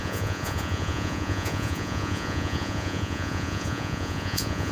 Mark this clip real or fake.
fake